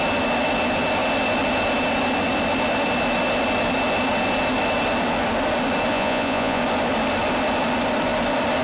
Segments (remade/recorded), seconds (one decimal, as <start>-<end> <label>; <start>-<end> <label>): 0.0-5.9 recorded; 5.9-6.6 remade; 6.6-8.6 recorded